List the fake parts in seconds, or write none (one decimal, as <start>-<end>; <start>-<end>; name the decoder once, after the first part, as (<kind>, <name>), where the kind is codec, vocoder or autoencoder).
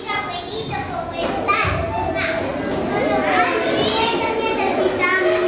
none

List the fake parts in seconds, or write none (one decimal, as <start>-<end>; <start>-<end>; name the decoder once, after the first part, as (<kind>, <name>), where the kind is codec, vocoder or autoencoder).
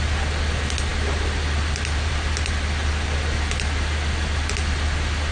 none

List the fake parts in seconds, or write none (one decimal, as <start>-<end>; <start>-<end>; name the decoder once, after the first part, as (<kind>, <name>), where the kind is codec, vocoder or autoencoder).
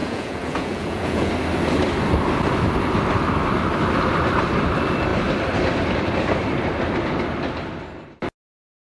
0.0-1.3 (vocoder, Vocos)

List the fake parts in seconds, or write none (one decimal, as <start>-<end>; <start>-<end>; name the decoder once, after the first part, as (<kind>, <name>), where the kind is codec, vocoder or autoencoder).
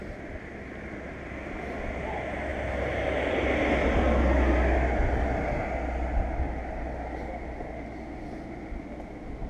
none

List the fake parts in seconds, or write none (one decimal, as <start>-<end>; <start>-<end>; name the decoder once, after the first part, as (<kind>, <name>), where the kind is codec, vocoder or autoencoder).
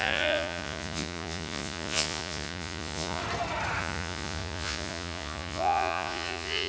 0.0-3.2 (vocoder, Vocos); 3.8-6.7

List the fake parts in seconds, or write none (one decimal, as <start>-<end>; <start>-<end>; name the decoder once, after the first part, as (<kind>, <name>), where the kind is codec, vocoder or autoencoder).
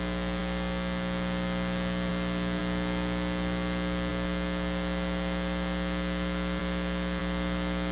none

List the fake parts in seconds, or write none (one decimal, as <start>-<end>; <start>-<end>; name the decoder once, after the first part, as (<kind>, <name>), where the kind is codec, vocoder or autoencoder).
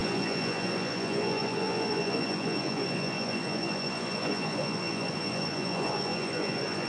0.0-6.9 (vocoder, Vocos)